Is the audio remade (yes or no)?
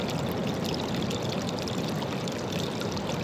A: no